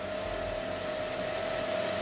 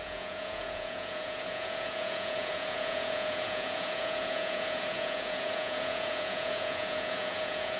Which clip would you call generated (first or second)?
second